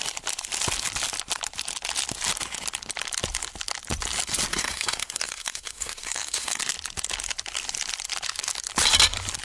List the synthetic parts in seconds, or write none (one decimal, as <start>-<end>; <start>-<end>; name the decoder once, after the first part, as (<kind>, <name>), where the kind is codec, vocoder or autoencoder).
4.5-6.6 (codec, SNAC)